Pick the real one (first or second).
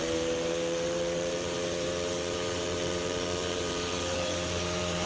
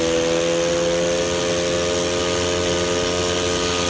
second